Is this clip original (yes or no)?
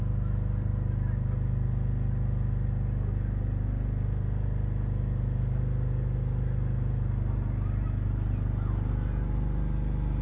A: yes